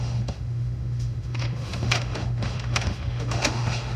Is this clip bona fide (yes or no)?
no